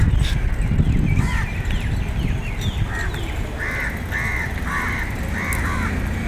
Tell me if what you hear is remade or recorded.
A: recorded